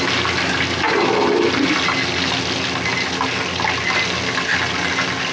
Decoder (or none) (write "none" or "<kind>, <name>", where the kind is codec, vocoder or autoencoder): none